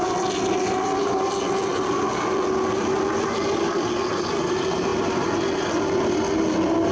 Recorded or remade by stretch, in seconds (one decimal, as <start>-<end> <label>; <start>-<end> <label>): 0.0-6.9 recorded